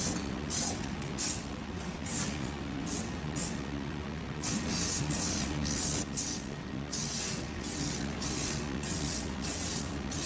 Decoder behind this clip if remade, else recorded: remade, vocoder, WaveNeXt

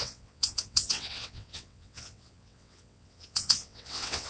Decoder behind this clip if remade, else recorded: remade, vocoder, WaveNeXt